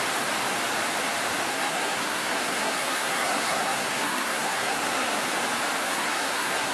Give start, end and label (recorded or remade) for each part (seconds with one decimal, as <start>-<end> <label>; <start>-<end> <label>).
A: 0.0-1.5 recorded; 1.5-5.2 remade; 5.2-5.8 recorded; 5.8-6.7 remade